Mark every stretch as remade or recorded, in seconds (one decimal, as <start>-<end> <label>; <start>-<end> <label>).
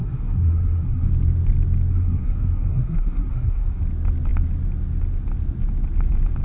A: 0.0-1.1 remade; 1.1-1.9 recorded; 1.9-3.8 remade; 3.8-6.4 recorded